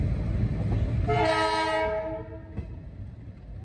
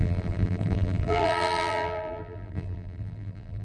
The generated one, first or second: second